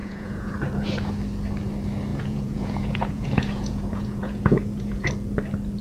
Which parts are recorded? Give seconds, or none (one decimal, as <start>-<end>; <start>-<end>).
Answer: 0.5-2.1; 5.1-5.8